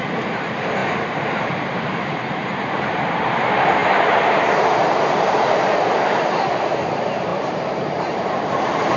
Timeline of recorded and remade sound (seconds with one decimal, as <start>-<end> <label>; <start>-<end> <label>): 0.0-9.0 remade